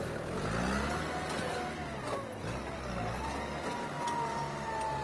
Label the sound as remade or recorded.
recorded